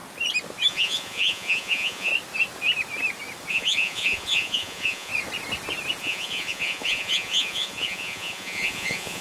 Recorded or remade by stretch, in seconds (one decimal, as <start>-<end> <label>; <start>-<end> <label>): 0.0-0.7 recorded; 0.7-2.1 remade; 2.1-3.5 recorded; 3.5-5.1 remade; 5.1-6.0 recorded; 6.0-9.2 remade